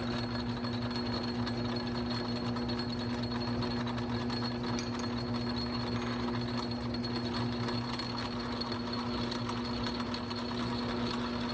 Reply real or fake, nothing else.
real